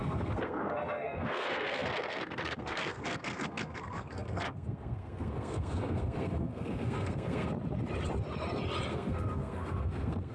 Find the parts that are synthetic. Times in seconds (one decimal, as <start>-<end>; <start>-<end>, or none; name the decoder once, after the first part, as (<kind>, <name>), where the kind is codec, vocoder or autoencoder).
0.0-7.5 (codec, SNAC); 8.9-10.3